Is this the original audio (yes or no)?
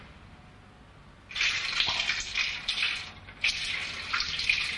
yes